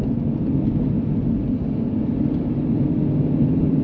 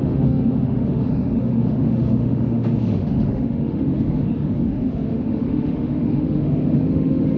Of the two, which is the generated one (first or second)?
second